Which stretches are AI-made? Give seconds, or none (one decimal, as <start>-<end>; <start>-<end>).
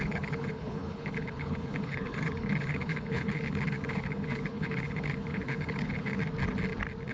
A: 0.0-6.2